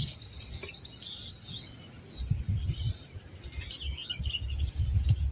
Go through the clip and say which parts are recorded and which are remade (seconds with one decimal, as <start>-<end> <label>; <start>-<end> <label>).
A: 0.0-5.3 recorded

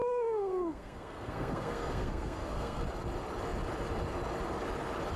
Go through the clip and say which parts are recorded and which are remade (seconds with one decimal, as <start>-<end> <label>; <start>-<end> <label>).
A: 0.0-2.8 remade; 2.8-5.2 recorded

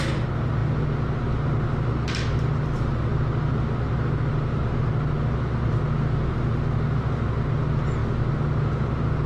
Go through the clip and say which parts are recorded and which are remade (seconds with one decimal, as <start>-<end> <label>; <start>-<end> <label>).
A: 0.0-9.3 recorded

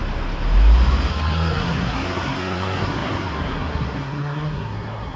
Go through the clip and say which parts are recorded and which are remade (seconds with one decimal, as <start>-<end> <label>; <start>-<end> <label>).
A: 0.0-1.1 recorded; 1.1-5.2 remade

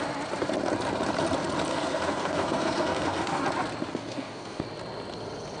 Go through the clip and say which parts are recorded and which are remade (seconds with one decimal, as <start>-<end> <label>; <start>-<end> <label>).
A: 0.0-1.7 recorded; 1.7-3.4 remade; 3.4-3.9 recorded; 3.9-4.6 remade; 4.6-5.6 recorded